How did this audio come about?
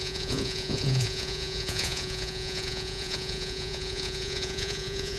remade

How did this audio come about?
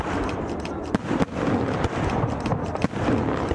recorded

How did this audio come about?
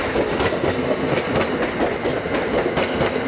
recorded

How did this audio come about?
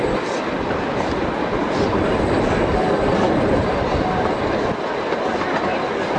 recorded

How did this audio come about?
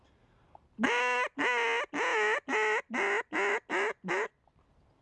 recorded